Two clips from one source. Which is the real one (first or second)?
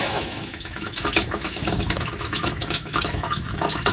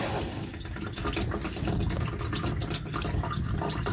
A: second